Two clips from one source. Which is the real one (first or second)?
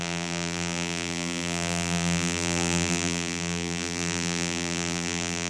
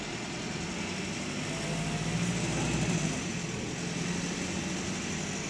second